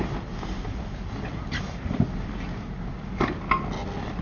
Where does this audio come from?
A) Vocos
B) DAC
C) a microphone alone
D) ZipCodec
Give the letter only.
C